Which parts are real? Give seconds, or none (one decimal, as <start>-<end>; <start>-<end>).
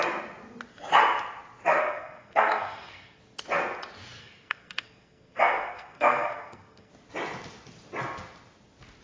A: 0.0-1.8; 3.2-4.2; 6.9-9.0